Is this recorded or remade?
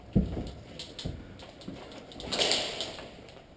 recorded